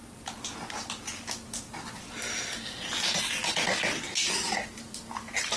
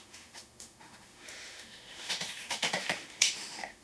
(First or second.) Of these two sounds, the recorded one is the first